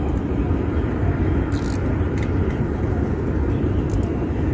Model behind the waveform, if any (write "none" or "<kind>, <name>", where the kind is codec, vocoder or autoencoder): none